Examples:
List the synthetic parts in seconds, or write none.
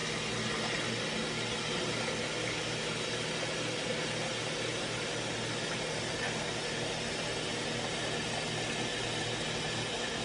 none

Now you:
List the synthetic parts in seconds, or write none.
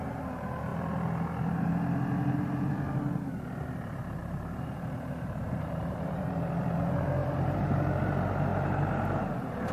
4.2-6.6 (vocoder, BigVGAN v2); 7.2-7.8; 8.5-9.2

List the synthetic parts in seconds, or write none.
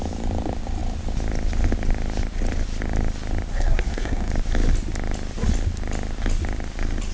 3.5-4.3 (codec, SNAC)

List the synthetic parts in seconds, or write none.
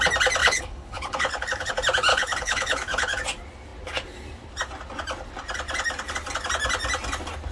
0.4-1.7 (codec, HILCodec); 2.1-3.2